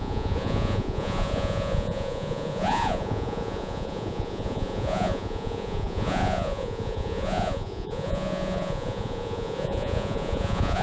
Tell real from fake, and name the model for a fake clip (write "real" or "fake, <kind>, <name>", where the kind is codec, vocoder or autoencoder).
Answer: fake, vocoder, Vocos